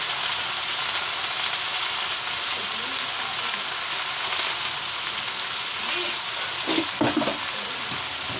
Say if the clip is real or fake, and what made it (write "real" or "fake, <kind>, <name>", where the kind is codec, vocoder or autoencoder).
real